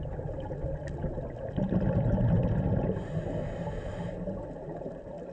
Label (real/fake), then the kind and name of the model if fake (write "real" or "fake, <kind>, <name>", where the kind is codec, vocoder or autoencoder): real